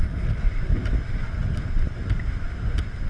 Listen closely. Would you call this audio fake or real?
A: real